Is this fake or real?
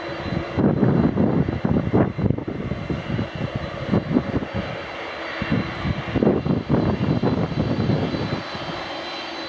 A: real